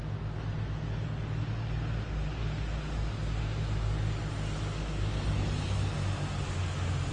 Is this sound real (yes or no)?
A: yes